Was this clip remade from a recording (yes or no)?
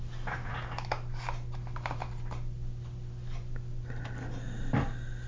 no